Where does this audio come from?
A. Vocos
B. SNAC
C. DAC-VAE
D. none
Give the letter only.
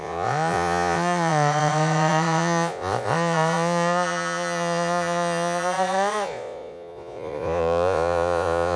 A